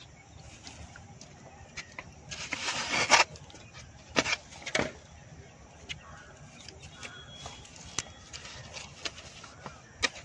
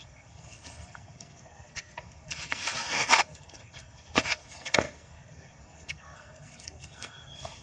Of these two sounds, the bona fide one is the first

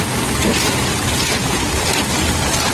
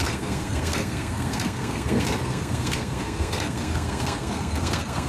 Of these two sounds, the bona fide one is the first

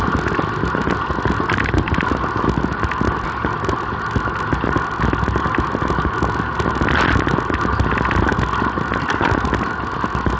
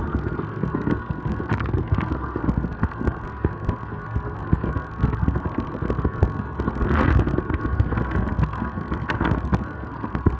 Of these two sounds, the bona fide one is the first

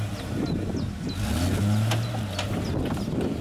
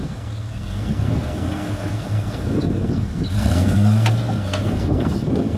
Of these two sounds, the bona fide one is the first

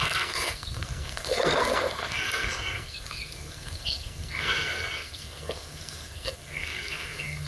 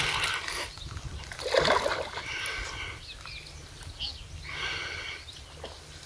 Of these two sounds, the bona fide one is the second